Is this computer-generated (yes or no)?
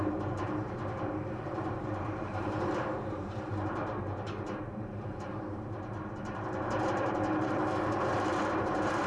yes